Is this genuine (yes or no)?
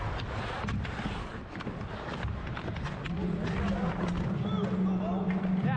yes